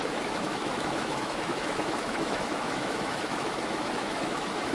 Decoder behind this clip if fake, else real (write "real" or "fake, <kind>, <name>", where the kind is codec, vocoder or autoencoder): fake, autoencoder, DAC-VAE